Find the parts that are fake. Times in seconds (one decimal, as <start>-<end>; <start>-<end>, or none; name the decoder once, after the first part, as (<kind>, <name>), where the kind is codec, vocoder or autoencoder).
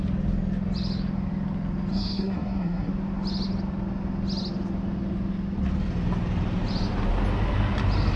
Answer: 1.9-2.9 (codec, SNAC)